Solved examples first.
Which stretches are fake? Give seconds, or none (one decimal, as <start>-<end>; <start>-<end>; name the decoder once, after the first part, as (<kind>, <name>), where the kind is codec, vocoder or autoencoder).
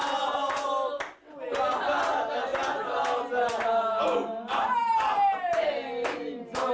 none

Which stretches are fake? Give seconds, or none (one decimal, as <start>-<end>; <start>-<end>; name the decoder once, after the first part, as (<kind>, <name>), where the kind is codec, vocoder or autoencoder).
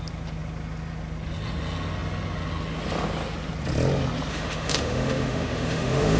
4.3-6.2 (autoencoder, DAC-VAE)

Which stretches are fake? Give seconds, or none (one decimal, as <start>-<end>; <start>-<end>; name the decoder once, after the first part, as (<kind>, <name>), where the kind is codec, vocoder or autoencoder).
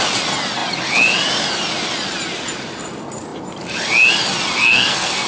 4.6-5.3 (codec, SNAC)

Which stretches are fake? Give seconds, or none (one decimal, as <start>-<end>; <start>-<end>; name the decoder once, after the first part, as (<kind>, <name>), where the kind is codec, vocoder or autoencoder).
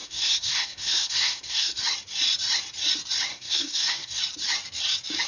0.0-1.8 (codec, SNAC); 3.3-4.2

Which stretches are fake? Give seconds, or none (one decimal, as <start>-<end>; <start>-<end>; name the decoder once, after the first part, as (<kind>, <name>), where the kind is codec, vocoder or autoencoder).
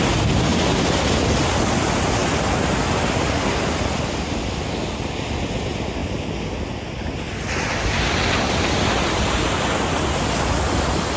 none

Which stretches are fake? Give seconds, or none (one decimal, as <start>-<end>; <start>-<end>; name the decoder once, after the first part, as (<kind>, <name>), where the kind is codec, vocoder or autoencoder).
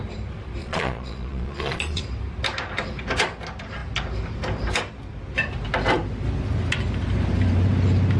0.6-2.0 (vocoder, Vocos)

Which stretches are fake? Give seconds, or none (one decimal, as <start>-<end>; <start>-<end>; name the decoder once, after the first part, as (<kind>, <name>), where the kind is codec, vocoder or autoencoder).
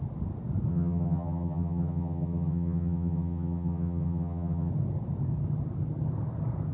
0.7-4.7 (vocoder, HiFi-GAN)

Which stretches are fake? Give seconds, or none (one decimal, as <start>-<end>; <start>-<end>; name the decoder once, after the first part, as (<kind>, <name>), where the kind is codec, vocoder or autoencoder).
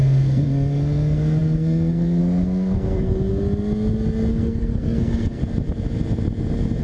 0.0-3.3 (codec, SNAC); 4.3-5.4